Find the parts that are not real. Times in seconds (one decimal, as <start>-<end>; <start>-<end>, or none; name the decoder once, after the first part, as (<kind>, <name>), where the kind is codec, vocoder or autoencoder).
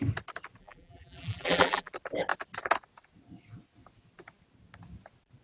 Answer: 0.6-1.9 (vocoder, BigVGAN v2)